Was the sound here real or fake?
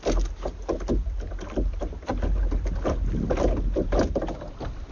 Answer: real